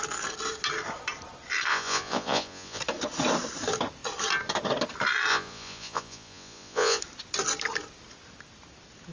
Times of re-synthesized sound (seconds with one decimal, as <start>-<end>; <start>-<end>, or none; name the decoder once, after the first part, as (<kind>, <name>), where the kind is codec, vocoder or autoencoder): 1.7-2.8 (vocoder, Vocos); 5.3-7.0